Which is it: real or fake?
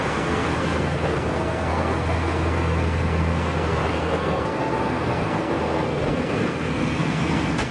fake